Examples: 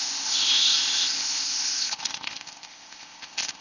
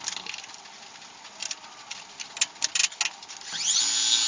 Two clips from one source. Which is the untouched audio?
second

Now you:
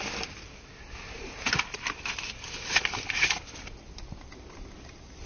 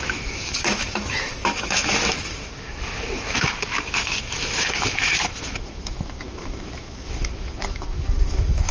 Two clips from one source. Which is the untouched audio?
first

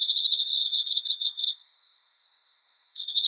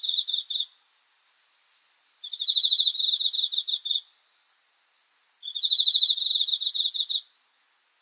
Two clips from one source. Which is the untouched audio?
second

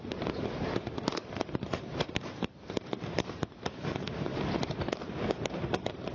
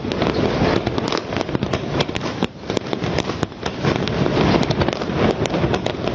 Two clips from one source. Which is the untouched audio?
second